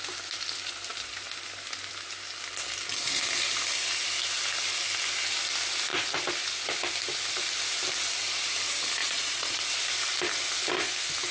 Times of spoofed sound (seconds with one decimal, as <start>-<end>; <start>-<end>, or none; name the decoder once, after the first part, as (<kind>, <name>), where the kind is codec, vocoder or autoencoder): 9.0-9.6 (vocoder, Vocos)